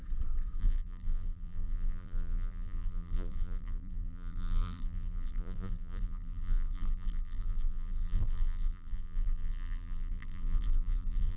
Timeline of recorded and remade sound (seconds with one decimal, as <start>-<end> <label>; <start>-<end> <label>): 0.0-0.6 recorded; 0.6-11.4 remade